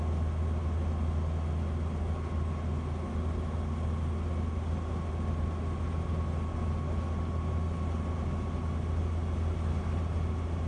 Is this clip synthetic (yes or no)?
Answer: no